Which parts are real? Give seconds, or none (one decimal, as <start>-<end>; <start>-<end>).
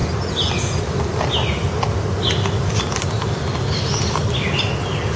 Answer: 0.0-5.2